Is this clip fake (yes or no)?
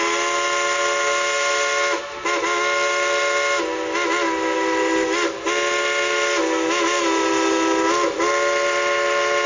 no